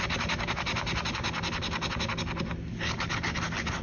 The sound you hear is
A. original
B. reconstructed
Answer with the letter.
A